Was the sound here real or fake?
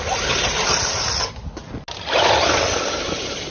real